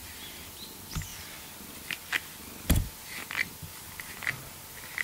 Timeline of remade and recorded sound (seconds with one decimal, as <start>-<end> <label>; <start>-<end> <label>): 0.0-5.0 recorded

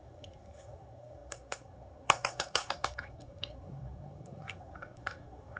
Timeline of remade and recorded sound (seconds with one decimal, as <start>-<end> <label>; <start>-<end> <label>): 0.0-5.6 remade

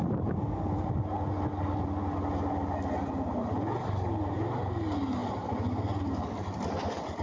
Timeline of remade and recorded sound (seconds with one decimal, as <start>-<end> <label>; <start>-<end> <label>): 0.0-7.2 recorded

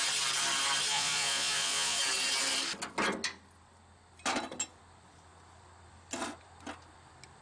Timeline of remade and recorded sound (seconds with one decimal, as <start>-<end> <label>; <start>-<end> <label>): 0.0-0.9 recorded; 0.9-2.0 remade; 2.0-7.4 recorded

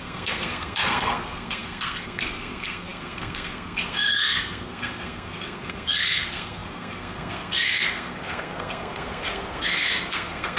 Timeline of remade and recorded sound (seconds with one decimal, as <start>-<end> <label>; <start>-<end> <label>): 0.0-10.6 remade

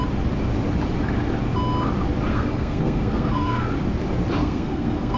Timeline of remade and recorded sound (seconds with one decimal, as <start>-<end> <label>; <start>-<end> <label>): 0.0-2.3 recorded; 2.3-3.7 remade; 3.7-4.4 recorded; 4.4-5.2 remade

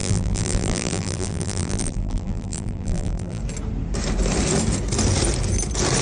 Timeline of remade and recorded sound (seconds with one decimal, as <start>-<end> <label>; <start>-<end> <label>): 0.0-3.4 remade; 3.4-6.0 recorded

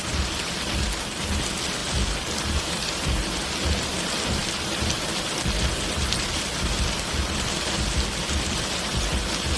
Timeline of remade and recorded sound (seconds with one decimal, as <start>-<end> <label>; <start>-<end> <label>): 0.0-9.6 recorded